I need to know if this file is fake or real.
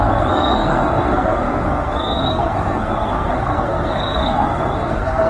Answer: fake